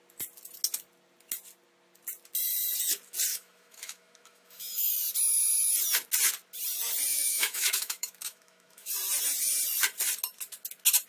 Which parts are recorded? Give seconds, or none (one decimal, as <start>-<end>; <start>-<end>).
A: 0.0-3.3; 4.9-7.1; 8.9-11.1